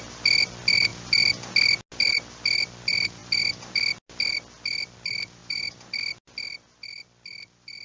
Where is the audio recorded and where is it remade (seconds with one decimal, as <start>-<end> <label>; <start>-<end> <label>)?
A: 0.0-3.2 recorded; 3.2-3.8 remade; 3.8-5.4 recorded; 5.4-6.2 remade; 6.2-7.8 recorded

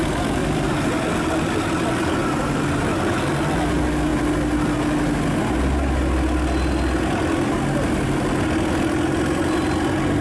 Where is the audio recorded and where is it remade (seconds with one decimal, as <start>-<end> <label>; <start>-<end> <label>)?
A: 0.0-0.4 recorded; 0.4-1.7 remade; 1.7-2.2 recorded; 2.2-2.8 remade; 2.8-10.2 recorded